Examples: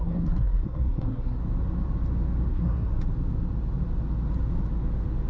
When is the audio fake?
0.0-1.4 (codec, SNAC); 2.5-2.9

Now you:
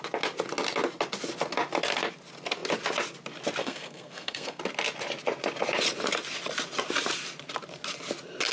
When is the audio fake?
3.6-4.6 (codec, SNAC)